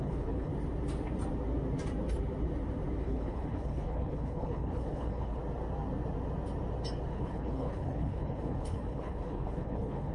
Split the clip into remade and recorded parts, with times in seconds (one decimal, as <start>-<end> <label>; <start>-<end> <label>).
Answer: 0.0-0.5 remade; 0.5-3.0 recorded; 3.0-5.4 remade; 5.4-7.1 recorded; 7.1-10.1 remade